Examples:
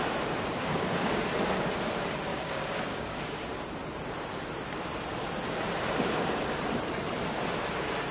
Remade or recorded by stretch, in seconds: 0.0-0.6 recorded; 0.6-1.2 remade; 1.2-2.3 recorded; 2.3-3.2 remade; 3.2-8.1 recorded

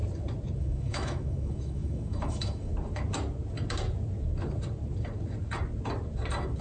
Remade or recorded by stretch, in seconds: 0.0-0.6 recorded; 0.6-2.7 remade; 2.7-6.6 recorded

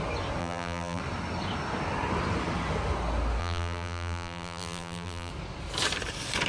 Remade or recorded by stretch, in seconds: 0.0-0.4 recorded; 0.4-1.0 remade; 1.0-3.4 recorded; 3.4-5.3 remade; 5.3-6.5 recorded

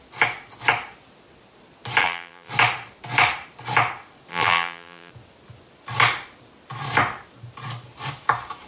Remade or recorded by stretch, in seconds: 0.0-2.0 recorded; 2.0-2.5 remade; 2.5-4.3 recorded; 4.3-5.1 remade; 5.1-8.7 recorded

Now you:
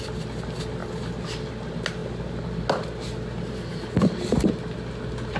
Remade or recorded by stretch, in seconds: 0.0-5.4 recorded

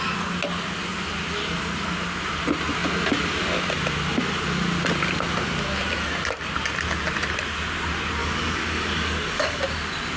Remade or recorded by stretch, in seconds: 0.0-8.2 recorded; 8.2-9.6 remade; 9.6-10.2 recorded